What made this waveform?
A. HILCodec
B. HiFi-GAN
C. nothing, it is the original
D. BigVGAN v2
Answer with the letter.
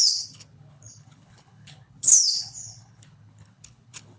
A